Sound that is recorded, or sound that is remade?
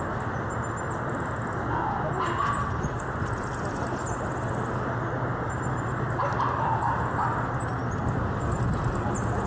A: recorded